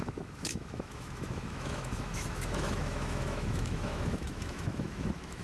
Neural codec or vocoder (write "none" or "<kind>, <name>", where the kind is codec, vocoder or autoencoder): autoencoder, DAC-VAE